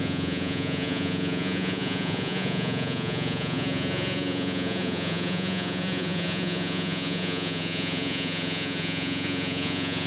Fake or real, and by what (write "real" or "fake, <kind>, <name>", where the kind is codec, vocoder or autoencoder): fake, vocoder, Vocos